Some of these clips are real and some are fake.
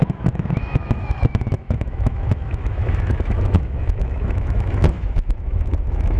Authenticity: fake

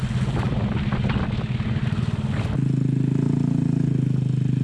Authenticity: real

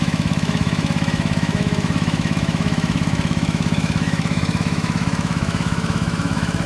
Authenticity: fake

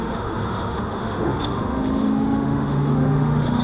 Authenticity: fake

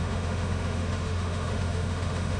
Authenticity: fake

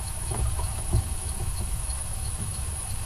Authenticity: fake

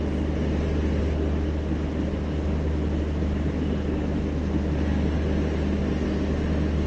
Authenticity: real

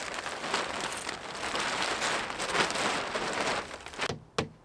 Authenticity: real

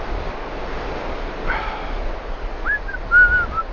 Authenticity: real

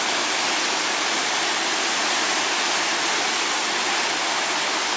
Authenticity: real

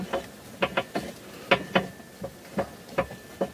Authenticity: real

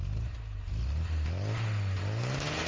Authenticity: real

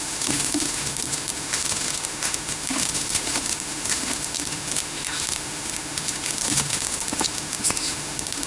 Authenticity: fake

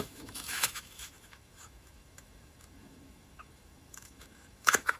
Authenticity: fake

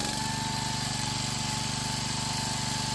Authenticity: real